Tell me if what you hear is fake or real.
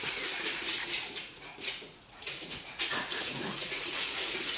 fake